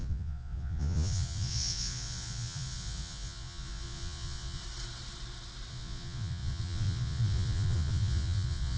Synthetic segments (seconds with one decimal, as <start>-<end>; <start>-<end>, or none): 0.0-4.6; 5.7-8.8